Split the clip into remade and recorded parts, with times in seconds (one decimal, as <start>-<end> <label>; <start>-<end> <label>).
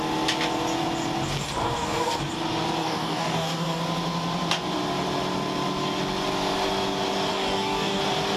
0.0-1.6 recorded; 1.6-2.2 remade; 2.2-2.8 recorded; 2.8-3.8 remade; 3.8-7.3 recorded; 7.3-8.0 remade; 8.0-8.4 recorded